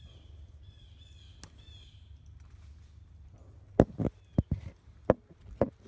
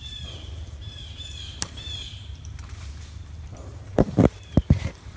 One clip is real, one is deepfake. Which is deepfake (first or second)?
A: second